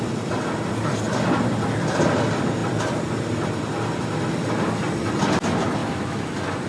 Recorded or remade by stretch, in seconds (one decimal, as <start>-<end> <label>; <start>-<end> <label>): 0.0-5.8 recorded; 5.8-6.3 remade; 6.3-6.7 recorded